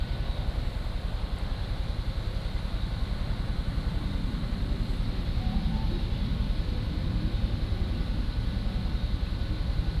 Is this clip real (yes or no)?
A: yes